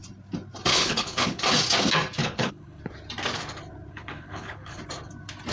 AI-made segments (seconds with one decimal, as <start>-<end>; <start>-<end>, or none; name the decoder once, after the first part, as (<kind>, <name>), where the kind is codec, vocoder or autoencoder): 0.7-1.4 (codec, HILCodec); 2.2-2.8; 3.9-4.8